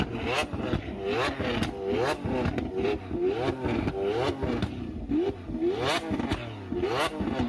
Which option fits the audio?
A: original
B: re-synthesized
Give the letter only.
A